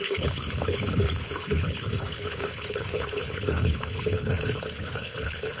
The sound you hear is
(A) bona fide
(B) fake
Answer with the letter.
B